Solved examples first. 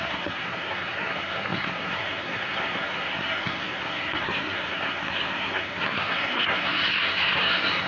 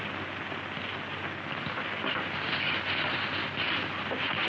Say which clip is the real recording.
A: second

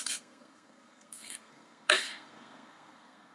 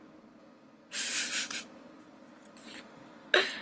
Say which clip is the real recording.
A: second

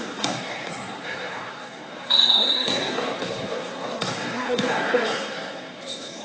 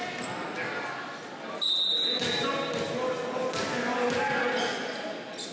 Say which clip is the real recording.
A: second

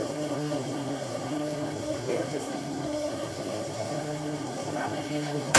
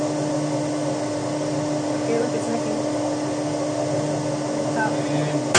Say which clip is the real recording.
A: second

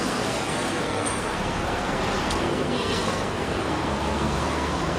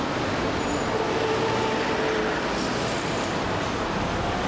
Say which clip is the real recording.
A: second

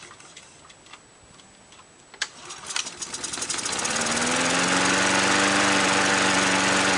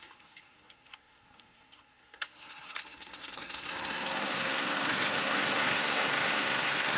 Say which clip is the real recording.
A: first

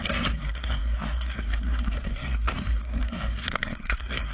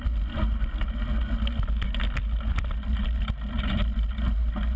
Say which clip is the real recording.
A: second